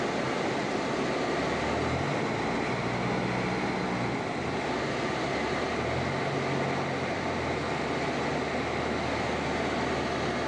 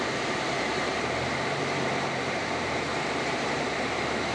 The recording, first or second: first